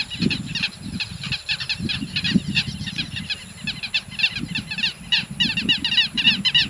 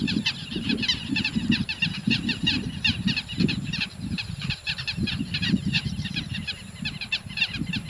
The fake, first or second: second